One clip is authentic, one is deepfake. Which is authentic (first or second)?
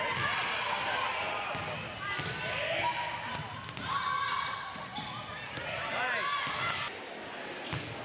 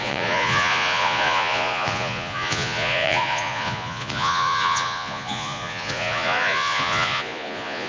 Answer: first